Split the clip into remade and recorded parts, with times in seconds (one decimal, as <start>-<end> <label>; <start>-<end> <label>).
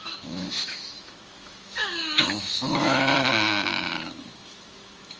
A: 0.0-5.2 remade